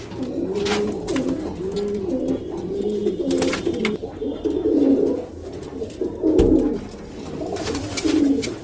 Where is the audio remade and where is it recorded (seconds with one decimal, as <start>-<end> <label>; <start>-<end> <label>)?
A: 0.0-8.6 recorded